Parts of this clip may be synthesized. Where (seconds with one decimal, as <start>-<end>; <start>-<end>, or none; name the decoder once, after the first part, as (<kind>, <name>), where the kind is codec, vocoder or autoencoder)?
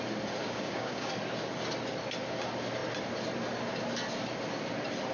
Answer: 0.4-1.1 (codec, DAC)